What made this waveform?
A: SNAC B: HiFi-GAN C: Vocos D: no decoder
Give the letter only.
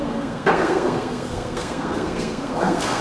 A